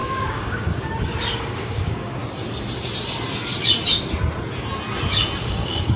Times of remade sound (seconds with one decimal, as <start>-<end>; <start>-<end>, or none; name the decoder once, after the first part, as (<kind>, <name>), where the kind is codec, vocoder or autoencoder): 0.0-2.2 (codec, DAC); 5.5-6.0